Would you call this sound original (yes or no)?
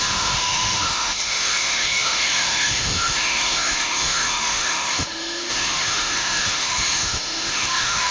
no